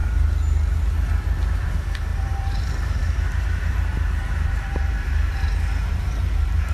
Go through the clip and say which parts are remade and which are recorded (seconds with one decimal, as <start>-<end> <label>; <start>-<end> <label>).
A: 0.0-1.5 recorded; 1.5-6.7 remade